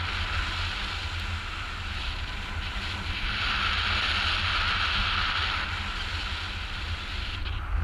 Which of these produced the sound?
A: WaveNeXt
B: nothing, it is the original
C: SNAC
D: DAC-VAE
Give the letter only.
B